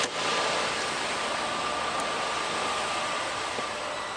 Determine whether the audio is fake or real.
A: real